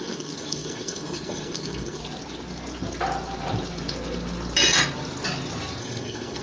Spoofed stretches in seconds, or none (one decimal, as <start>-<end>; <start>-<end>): 0.0-2.0; 5.8-6.4